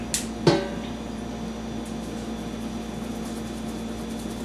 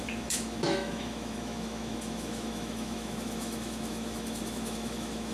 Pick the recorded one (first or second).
first